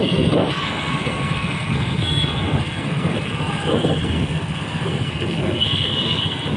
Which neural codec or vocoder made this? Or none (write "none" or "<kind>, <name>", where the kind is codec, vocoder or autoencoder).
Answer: codec, SNAC